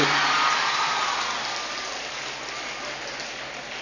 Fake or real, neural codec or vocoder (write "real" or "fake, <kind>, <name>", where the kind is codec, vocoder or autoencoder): real